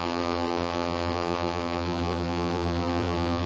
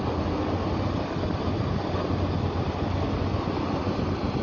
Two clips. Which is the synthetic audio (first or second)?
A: first